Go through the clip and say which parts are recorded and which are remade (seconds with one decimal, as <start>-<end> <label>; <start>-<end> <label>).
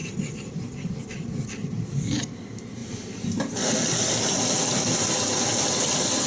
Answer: 0.0-2.8 recorded; 2.8-3.7 remade; 3.7-6.3 recorded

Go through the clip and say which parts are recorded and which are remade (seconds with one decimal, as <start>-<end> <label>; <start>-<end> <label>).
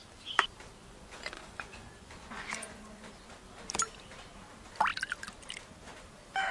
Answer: 0.0-0.8 recorded; 0.8-3.1 remade; 3.1-6.5 recorded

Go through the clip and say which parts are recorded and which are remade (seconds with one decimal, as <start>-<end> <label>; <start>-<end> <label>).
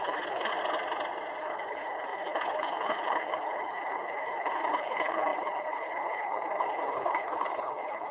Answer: 0.0-0.5 remade; 0.5-1.4 recorded; 1.4-8.1 remade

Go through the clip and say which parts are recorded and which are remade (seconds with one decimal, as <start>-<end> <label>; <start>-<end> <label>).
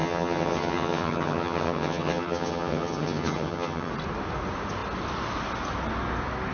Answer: 0.0-3.9 remade; 3.9-6.5 recorded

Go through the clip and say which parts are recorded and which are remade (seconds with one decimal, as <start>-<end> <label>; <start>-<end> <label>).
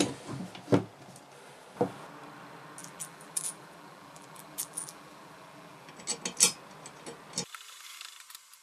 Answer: 0.0-2.8 recorded; 2.8-5.9 remade; 5.9-8.6 recorded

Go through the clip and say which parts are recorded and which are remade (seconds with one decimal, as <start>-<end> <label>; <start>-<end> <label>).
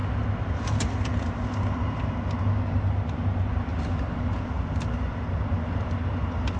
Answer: 0.0-6.6 recorded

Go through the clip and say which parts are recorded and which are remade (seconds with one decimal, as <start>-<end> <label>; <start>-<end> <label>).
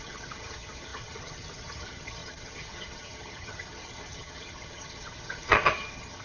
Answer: 0.0-6.2 remade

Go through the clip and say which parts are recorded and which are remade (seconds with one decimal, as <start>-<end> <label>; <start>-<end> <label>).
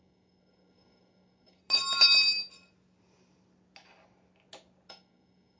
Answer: 0.0-1.6 remade; 1.6-4.9 recorded; 4.9-5.6 remade